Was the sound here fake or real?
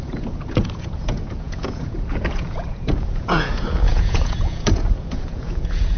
fake